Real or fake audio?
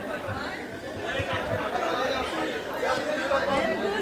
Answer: real